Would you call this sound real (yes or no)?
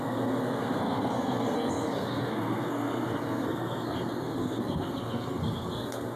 no